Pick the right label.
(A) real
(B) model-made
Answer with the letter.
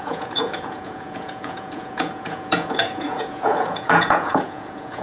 B